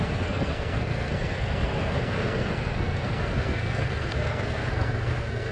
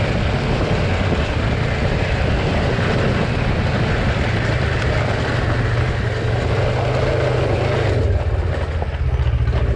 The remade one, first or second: first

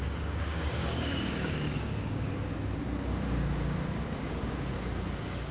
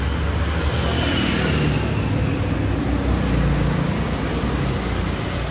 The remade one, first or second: first